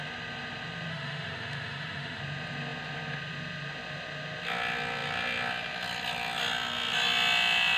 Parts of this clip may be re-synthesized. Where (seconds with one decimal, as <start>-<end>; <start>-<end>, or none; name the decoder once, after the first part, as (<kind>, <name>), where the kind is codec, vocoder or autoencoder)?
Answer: 0.9-2.2 (autoencoder, DAC-VAE)